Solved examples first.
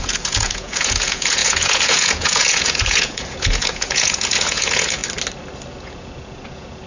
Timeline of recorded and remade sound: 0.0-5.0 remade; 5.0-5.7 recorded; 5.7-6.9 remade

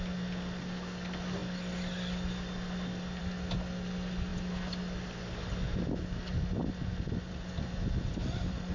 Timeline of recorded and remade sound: 0.0-8.7 recorded

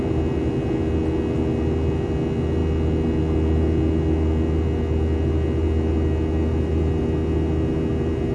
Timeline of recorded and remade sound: 0.0-8.3 recorded

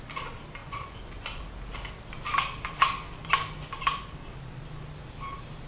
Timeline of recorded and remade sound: 0.0-0.6 recorded; 0.6-1.4 remade; 1.4-5.7 recorded

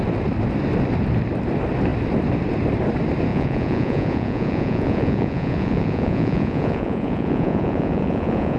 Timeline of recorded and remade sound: 0.0-3.3 recorded; 3.3-8.6 remade

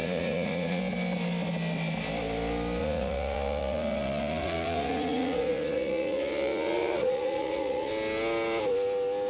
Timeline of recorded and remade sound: 0.0-0.8 remade; 0.8-2.8 recorded; 2.8-7.9 remade; 7.9-9.3 recorded

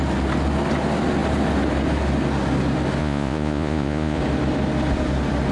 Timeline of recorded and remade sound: 0.0-3.0 recorded; 3.0-4.2 remade; 4.2-5.5 recorded

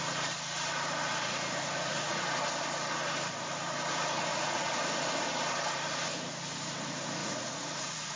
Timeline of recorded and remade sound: 0.0-1.1 recorded; 1.1-2.4 remade; 2.4-4.3 recorded; 4.3-4.8 remade; 4.8-7.2 recorded; 7.2-8.2 remade